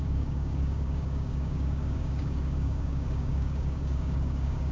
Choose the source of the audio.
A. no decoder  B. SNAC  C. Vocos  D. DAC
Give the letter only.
D